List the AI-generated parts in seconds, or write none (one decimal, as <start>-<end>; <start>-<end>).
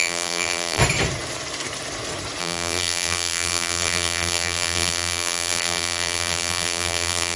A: 0.0-0.8; 2.4-7.4